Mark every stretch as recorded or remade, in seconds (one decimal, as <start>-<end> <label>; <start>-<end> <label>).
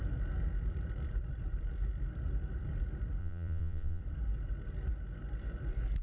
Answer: 0.0-3.2 recorded; 3.2-4.0 remade; 4.0-6.0 recorded